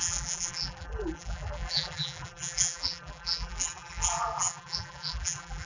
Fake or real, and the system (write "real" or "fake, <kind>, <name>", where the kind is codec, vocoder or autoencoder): fake, vocoder, BigVGAN v2